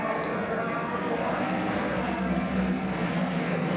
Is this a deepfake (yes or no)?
yes